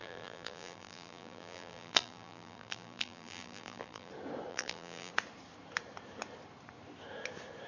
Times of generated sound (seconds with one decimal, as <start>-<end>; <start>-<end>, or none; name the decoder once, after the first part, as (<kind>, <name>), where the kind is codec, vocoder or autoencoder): 0.0-4.1 (vocoder, BigVGAN v2); 4.5-5.1